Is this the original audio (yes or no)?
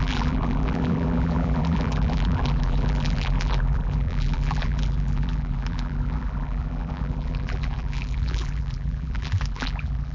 no